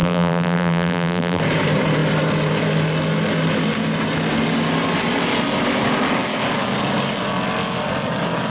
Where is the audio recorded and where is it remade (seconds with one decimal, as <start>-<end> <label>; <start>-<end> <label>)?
0.0-1.4 remade; 1.4-8.5 recorded